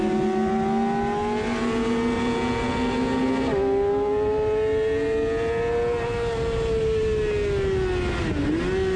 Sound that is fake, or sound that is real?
real